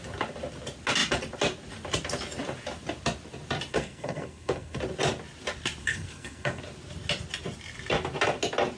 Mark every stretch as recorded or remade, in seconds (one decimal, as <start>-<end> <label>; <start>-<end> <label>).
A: 0.0-3.7 recorded; 3.7-4.8 remade; 4.8-5.8 recorded; 5.8-6.6 remade; 6.6-8.8 recorded